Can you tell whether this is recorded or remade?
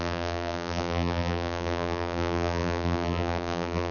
remade